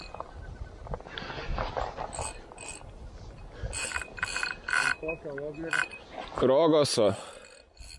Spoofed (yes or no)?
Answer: no